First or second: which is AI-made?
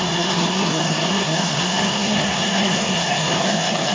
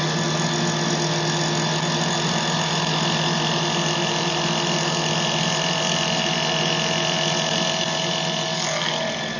first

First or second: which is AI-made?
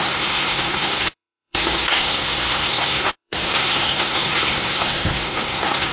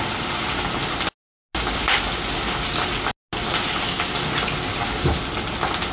first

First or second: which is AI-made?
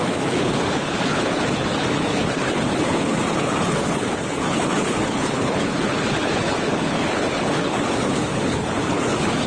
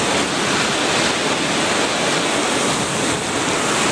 first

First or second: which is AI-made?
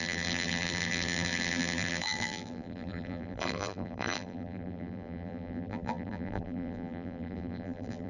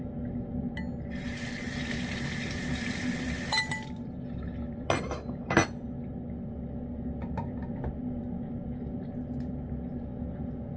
first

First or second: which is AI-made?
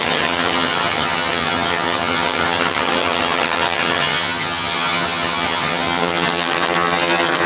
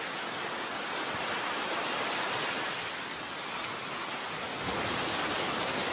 first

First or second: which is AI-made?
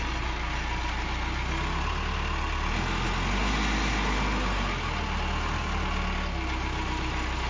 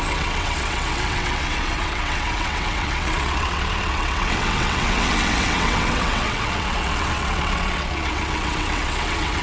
second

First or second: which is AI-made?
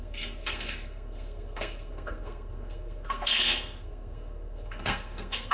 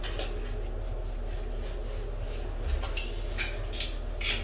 first